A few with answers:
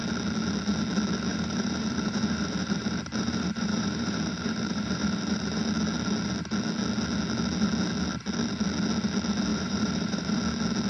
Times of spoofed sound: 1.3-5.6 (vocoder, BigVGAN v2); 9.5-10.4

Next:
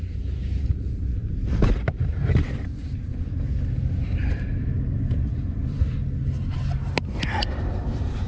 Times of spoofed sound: 0.0-6.0 (vocoder, BigVGAN v2); 7.5-8.3

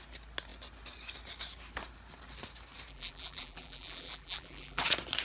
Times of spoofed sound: 2.9-4.8 (vocoder, BigVGAN v2)

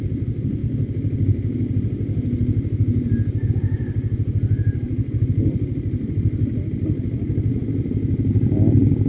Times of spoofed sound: 0.0-0.6 (vocoder, BigVGAN v2); 3.5-9.1

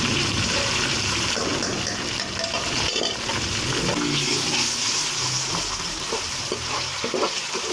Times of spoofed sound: 0.0-1.7 (vocoder, BigVGAN v2); 5.8-6.9

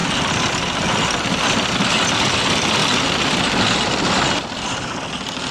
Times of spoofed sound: 1.7-2.8 (vocoder, BigVGAN v2); 3.6-5.5